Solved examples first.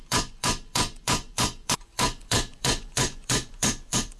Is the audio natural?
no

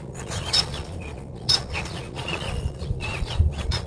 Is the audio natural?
no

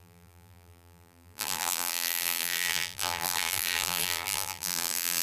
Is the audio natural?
no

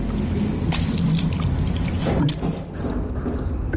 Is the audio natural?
yes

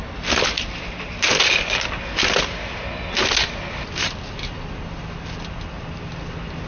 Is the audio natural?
yes